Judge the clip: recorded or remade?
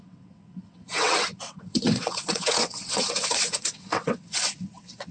remade